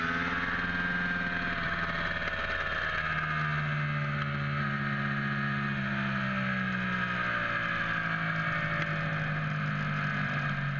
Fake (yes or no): no